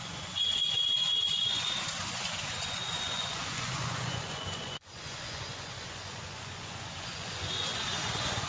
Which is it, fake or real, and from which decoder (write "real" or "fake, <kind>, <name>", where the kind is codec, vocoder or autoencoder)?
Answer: fake, vocoder, Vocos